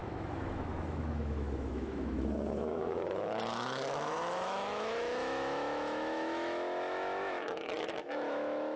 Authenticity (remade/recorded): remade